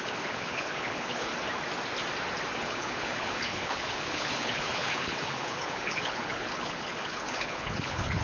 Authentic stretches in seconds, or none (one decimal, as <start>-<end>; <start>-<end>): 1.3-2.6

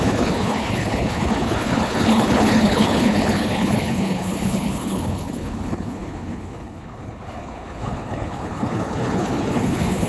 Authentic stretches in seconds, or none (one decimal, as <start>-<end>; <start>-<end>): none

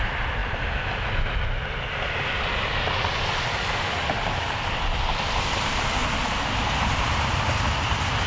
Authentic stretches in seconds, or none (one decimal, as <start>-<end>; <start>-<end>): 0.0-8.3